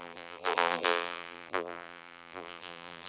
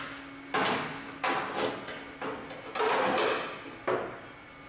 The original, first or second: second